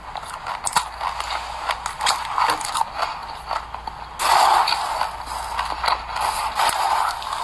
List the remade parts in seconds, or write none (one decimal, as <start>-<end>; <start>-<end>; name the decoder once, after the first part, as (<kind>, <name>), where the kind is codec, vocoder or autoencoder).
none